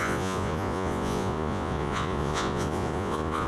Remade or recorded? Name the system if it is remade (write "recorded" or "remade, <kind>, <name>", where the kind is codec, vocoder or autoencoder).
remade, vocoder, Vocos